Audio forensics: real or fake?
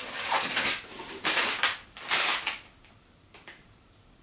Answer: fake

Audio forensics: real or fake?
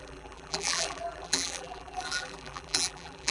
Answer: fake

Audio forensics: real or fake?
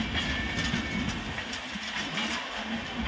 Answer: real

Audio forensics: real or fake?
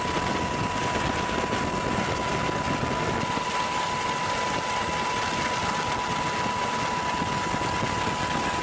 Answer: real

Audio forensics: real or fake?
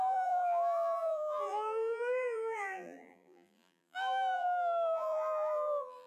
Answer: fake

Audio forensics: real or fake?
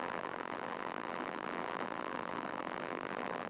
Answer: fake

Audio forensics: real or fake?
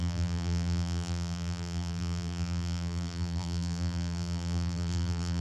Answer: fake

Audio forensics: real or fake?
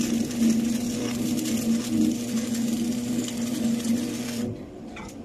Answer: real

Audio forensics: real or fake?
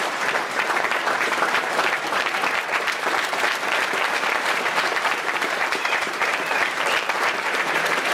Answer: fake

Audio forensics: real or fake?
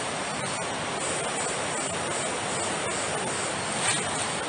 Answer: real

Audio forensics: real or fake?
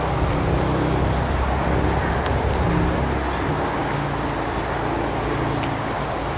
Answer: real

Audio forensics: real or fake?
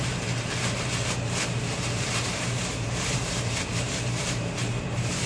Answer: fake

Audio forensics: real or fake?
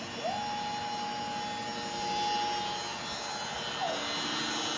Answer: real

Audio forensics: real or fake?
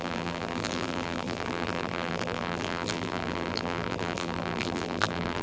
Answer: fake